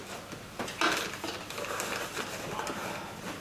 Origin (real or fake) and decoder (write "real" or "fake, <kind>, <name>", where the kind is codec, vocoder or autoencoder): real